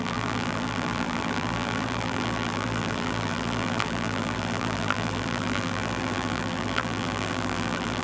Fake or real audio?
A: fake